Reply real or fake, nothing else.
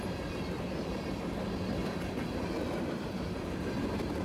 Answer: real